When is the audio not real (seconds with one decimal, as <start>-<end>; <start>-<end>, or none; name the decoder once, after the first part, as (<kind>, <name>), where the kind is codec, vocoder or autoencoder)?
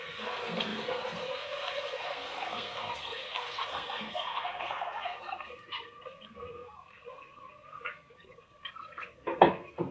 0.0-9.9 (codec, SNAC)